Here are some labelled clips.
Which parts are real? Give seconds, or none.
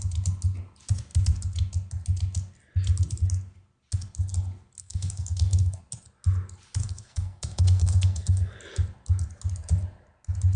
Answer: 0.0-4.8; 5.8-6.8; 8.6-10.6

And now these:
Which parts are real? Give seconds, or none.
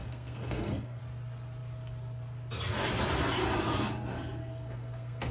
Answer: 1.0-4.4